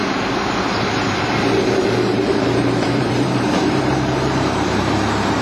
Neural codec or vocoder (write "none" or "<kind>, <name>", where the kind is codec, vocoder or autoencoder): vocoder, BigVGAN v2